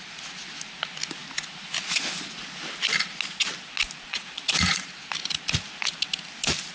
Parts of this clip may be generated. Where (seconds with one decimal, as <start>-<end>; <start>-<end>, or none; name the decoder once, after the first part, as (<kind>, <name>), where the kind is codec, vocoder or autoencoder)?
4.1-4.9 (vocoder, Vocos)